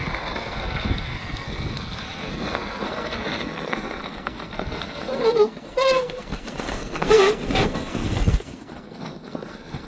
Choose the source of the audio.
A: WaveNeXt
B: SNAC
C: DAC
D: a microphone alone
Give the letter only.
B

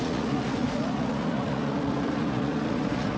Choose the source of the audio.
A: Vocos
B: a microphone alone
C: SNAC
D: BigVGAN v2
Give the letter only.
A